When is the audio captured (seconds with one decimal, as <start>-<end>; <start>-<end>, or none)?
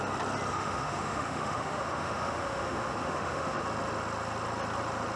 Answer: 0.0-0.5; 3.6-5.2